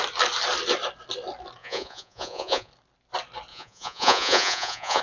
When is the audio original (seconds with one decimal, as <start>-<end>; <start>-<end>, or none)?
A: 0.0-1.6; 2.7-3.5